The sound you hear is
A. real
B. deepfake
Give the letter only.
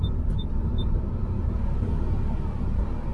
A